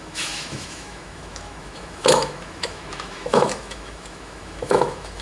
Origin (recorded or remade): remade